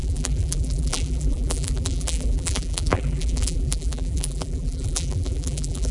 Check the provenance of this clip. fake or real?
fake